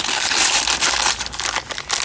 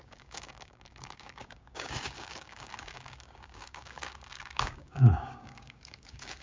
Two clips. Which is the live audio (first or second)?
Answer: first